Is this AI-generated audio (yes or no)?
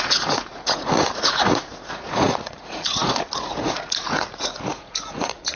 yes